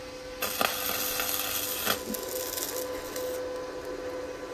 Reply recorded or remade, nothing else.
recorded